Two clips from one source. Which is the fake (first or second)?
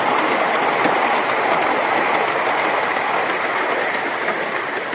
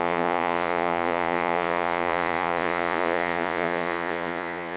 second